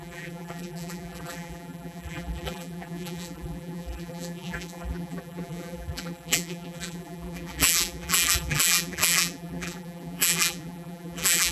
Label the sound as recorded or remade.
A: remade